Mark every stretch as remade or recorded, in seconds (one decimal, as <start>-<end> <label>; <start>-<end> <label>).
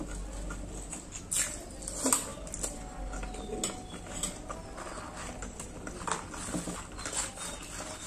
0.0-8.1 recorded